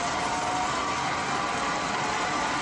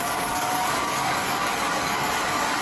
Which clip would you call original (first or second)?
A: first